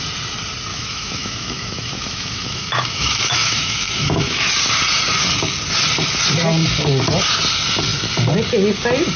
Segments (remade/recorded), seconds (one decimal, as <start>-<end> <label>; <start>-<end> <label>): 0.0-0.7 recorded; 0.7-4.5 remade; 4.5-9.2 recorded